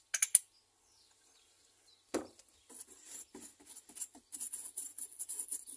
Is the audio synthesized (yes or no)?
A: no